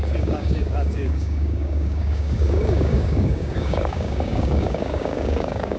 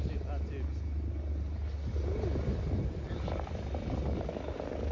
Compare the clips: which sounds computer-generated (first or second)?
first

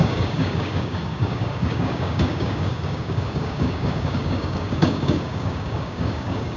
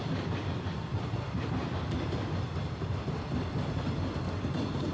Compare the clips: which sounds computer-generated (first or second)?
first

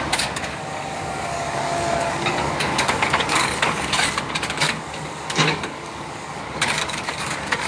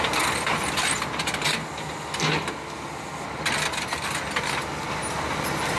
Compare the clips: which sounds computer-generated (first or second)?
first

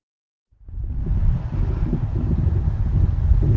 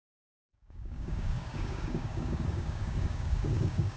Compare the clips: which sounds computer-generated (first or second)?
second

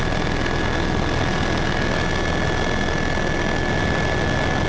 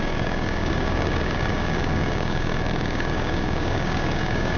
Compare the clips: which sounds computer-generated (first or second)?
second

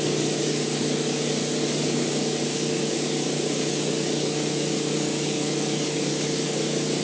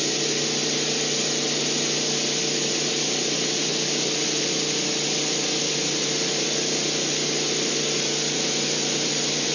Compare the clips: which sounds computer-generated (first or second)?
first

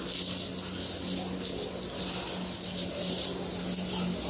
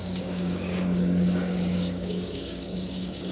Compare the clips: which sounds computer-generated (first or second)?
second